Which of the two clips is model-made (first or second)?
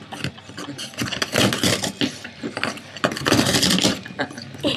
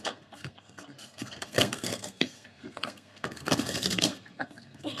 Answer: second